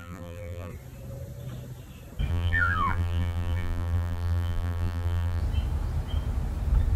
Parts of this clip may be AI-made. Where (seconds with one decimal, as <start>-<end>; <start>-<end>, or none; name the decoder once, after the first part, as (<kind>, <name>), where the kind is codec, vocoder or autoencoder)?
0.0-0.7 (vocoder, BigVGAN v2); 2.3-5.4